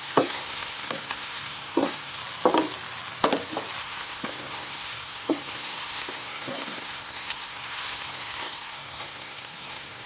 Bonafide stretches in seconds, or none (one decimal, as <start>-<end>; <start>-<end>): 2.2-3.8